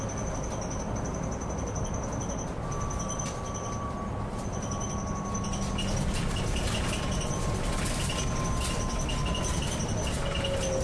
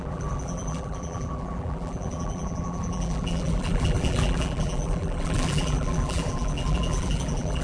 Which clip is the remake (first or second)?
second